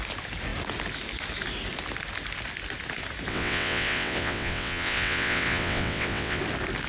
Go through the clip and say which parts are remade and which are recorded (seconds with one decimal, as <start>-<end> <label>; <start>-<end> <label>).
0.0-3.3 recorded; 3.3-6.4 remade; 6.4-6.9 recorded